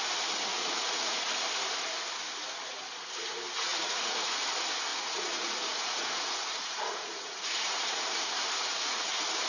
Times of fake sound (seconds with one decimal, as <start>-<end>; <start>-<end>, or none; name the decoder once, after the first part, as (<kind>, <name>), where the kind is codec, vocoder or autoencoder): 0.5-1.3 (vocoder, Vocos); 3.7-4.5; 4.9-9.0

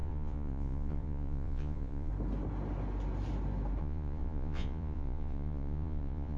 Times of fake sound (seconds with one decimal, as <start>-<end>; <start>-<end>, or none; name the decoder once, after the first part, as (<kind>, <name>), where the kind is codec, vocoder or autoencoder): 0.0-2.1 (vocoder, Vocos); 3.8-6.4

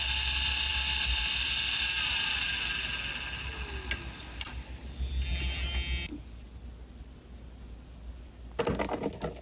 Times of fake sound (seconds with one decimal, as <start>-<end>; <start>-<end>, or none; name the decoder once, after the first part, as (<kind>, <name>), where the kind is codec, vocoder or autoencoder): none

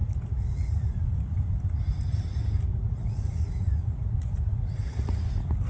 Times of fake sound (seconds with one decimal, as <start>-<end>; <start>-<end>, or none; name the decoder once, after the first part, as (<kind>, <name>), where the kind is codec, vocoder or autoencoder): 0.0-1.2 (vocoder, Vocos); 2.7-5.2

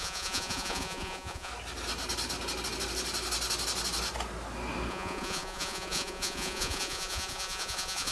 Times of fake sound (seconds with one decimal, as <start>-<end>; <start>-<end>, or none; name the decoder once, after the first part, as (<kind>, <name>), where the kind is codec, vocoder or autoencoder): 0.0-1.5 (vocoder, Vocos); 4.9-8.1

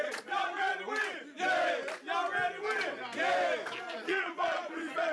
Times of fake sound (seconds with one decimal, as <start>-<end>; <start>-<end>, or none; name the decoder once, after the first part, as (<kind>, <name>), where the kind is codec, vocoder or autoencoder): 0.0-0.7 (vocoder, Vocos); 3.8-5.1